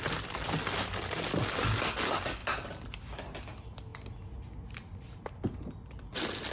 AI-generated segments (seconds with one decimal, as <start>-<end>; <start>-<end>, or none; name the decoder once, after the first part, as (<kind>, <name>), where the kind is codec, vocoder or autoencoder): none